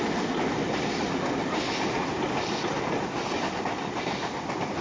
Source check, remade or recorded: recorded